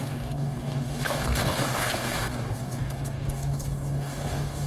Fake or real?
fake